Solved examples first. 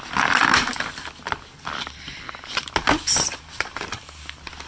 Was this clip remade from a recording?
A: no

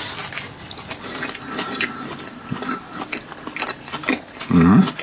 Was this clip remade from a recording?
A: no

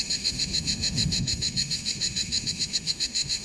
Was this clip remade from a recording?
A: yes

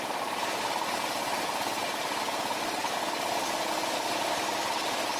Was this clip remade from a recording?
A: no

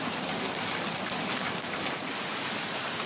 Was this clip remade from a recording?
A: no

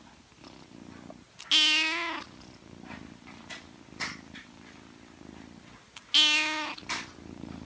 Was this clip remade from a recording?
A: no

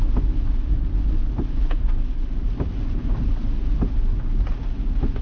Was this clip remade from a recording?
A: no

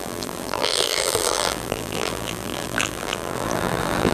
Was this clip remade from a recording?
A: yes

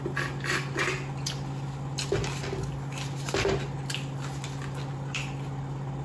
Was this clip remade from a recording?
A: no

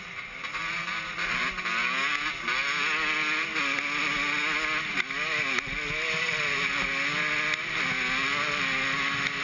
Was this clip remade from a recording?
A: no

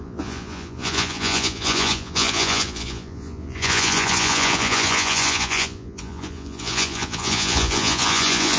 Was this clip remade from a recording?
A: yes